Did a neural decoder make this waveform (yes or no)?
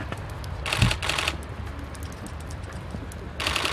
no